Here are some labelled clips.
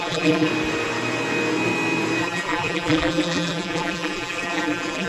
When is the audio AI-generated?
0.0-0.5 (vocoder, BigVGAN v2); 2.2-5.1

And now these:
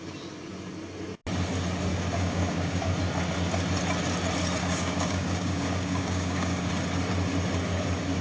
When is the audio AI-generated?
1.9-2.8 (codec, DAC); 4.6-6.7

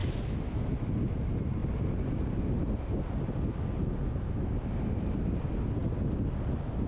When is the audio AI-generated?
none

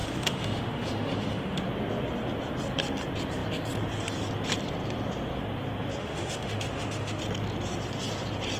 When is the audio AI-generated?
0.0-1.6 (autoencoder, DAC-VAE); 6.0-7.2